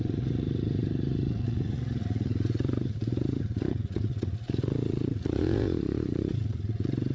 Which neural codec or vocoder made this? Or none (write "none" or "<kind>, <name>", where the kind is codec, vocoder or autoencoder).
vocoder, Vocos